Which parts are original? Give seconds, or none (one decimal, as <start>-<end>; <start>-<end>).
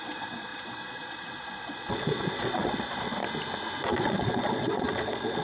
3.2-4.0